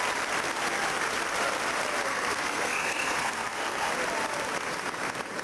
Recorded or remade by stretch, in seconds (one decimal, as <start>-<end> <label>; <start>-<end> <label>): 0.0-2.1 recorded; 2.1-3.9 remade; 3.9-5.4 recorded

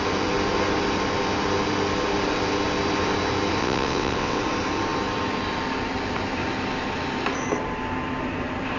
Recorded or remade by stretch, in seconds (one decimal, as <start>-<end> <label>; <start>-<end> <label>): 0.0-3.6 recorded; 3.6-4.4 remade; 4.4-8.8 recorded

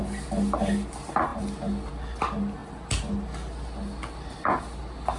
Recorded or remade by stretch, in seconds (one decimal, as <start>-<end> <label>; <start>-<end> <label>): 0.0-5.2 recorded

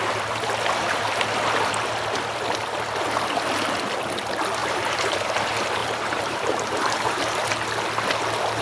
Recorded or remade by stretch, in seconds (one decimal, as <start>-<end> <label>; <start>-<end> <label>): 0.0-4.6 recorded; 4.6-5.2 remade; 5.2-5.8 recorded; 5.8-7.5 remade; 7.5-8.6 recorded